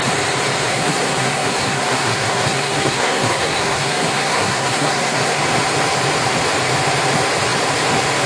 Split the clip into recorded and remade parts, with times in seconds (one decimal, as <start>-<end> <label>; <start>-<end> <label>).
0.0-0.7 recorded; 0.7-5.4 remade; 5.4-8.3 recorded